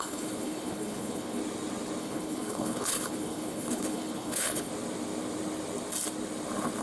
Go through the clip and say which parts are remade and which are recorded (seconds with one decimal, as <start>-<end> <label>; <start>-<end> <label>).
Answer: 0.0-1.4 remade; 1.4-2.0 recorded; 2.0-4.7 remade; 4.7-6.8 recorded